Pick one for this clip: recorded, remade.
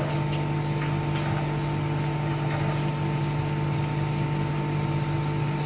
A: recorded